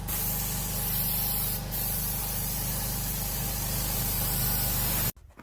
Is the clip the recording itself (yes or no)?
yes